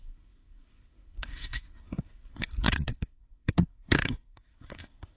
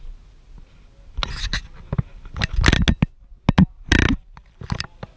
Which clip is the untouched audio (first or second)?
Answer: second